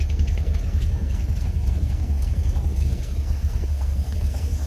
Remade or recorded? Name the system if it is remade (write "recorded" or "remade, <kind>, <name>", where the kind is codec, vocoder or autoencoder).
remade, codec, SNAC